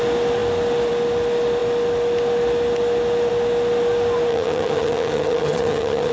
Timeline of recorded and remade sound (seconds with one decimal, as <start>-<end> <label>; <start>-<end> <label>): 0.0-4.3 recorded; 4.3-6.1 remade